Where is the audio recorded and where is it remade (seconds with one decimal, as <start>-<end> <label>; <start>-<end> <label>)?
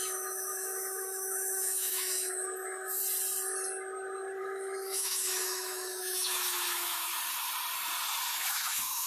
0.0-3.0 remade; 3.0-4.4 recorded; 4.4-7.1 remade; 7.1-8.3 recorded; 8.3-9.1 remade